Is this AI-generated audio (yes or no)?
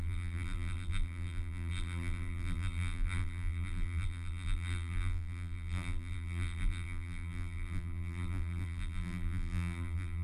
yes